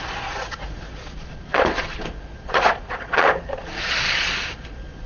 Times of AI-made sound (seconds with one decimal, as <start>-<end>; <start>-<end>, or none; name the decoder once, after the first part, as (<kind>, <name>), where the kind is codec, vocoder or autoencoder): 0.0-5.1 (vocoder, Vocos)